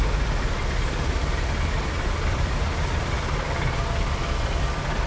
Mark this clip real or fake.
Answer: real